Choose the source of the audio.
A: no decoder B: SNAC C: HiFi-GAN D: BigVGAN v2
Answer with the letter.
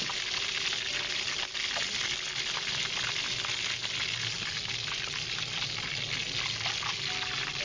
A